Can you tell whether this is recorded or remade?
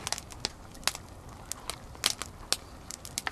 recorded